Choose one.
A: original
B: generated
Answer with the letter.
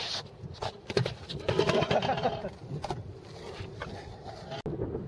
A